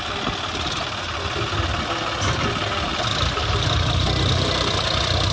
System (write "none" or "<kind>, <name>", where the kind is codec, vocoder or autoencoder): none